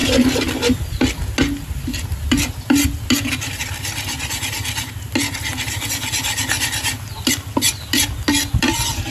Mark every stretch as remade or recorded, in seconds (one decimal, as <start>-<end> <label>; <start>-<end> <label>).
0.0-9.1 recorded